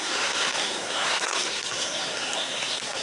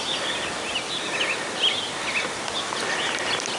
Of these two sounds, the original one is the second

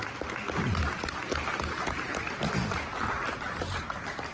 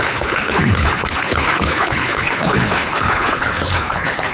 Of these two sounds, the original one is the first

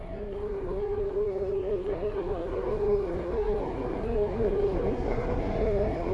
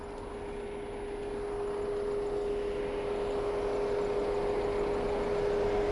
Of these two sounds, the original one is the second